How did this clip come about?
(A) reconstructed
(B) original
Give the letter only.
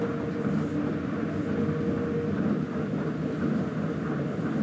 B